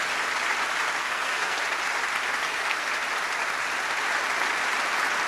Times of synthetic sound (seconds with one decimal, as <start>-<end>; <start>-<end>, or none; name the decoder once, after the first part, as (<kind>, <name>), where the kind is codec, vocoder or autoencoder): 1.0-1.6 (codec, SNAC); 2.4-2.9